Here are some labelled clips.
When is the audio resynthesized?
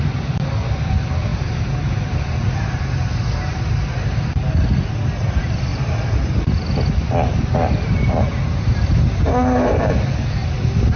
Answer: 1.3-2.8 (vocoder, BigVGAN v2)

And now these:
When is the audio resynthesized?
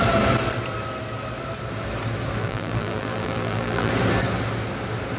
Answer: 2.4-3.9 (vocoder, BigVGAN v2)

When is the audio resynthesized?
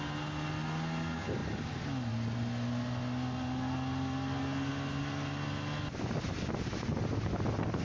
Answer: none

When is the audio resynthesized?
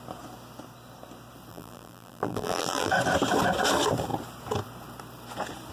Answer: 1.5-2.9 (vocoder, BigVGAN v2)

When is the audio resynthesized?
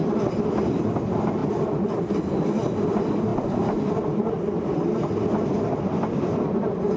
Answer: 3.3-3.9 (vocoder, BigVGAN v2)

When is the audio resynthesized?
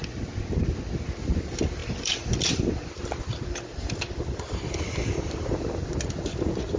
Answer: 1.8-5.9 (vocoder, BigVGAN v2)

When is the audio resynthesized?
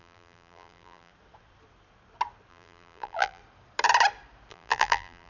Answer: 0.0-1.1 (vocoder, BigVGAN v2); 2.5-3.4; 4.5-5.3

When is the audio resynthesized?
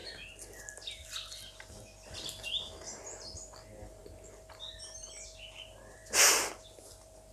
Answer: none